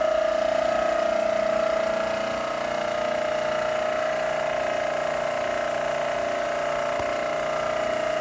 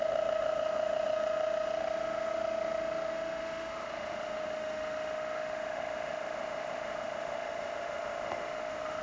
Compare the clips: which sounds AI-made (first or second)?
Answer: second